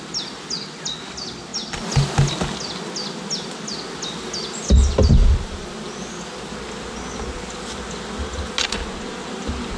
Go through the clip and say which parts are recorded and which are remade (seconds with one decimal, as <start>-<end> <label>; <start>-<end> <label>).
0.0-9.8 recorded